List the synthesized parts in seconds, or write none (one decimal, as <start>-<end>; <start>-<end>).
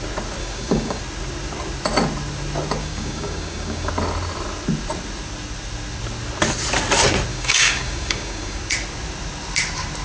0.4-1.0; 2.8-3.9; 7.3-8.6